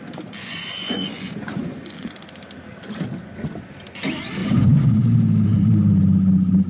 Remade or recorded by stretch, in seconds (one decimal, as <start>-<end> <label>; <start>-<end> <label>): 0.0-0.4 recorded; 0.4-2.1 remade; 2.1-4.4 recorded; 4.4-4.9 remade; 4.9-6.7 recorded